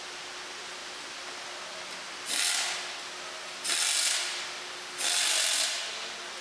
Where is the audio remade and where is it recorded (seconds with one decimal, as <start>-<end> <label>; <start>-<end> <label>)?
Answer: 0.0-6.4 recorded